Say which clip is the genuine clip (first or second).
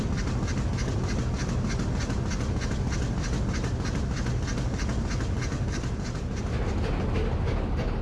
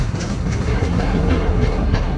first